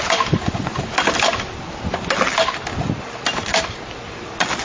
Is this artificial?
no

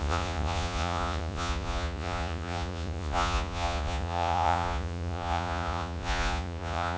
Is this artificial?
yes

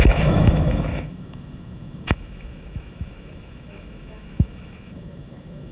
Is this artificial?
yes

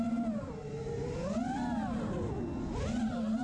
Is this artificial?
no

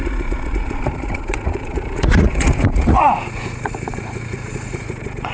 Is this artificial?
yes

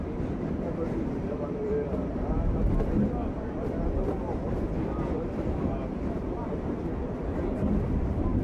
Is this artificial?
yes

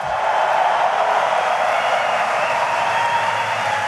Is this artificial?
yes